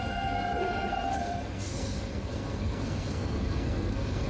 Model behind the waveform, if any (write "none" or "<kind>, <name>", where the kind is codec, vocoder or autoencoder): codec, SNAC